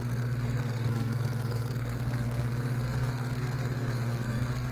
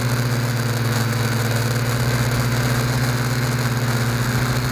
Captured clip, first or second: second